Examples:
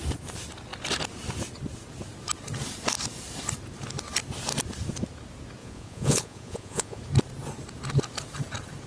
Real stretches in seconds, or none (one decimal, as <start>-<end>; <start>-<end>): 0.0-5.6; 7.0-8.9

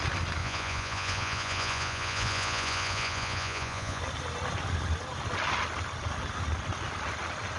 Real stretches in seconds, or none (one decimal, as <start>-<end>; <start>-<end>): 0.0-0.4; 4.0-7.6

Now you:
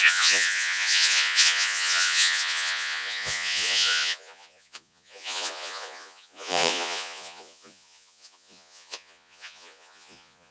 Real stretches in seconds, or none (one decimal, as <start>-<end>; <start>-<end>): none

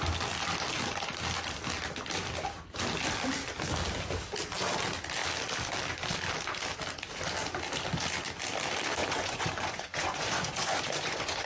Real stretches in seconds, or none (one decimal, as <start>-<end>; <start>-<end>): 0.0-9.0

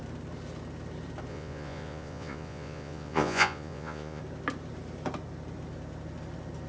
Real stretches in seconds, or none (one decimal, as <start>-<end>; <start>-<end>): 0.0-1.3; 4.2-6.7

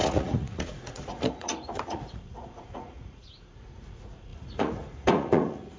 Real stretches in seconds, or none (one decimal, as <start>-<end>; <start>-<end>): none

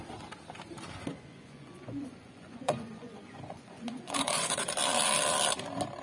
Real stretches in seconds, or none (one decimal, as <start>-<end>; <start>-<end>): 0.0-1.1; 4.7-6.0